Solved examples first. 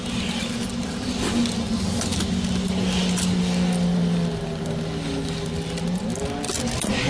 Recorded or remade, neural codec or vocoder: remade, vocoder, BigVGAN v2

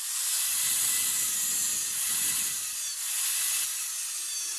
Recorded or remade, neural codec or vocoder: recorded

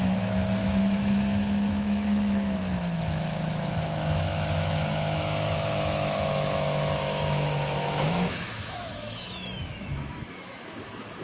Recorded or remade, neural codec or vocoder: remade, autoencoder, DAC-VAE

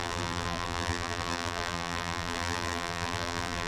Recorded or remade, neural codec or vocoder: remade, vocoder, BigVGAN v2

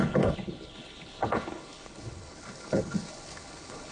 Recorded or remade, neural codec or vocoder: remade, codec, HILCodec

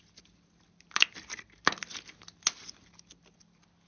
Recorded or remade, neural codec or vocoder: recorded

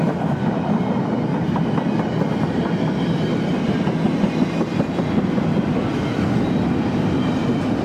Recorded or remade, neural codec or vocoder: recorded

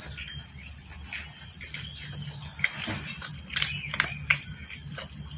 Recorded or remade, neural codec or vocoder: recorded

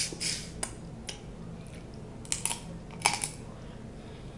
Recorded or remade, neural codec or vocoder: recorded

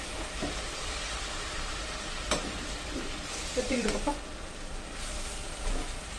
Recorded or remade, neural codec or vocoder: remade, vocoder, BigVGAN v2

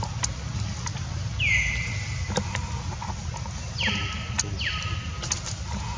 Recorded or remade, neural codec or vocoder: recorded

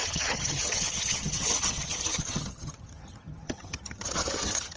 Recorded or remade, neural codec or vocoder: remade, vocoder, HiFi-GAN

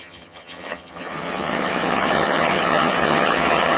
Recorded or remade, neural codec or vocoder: remade, vocoder, HiFi-GAN